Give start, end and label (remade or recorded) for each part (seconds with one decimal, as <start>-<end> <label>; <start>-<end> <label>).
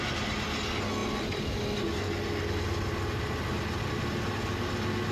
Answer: 0.0-5.1 recorded